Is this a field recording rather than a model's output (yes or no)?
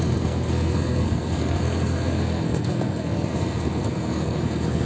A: no